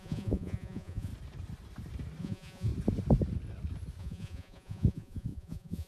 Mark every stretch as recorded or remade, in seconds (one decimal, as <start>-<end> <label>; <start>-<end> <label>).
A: 0.0-1.1 remade; 1.1-2.2 recorded; 2.2-2.7 remade; 2.7-4.0 recorded; 4.0-5.9 remade